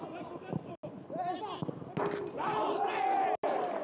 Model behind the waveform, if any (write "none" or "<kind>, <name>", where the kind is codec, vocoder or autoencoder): none